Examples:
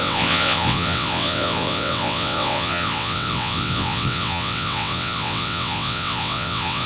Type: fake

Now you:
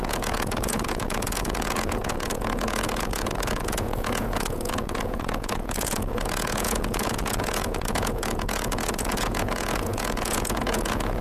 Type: fake